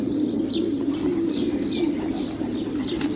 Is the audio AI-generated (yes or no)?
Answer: no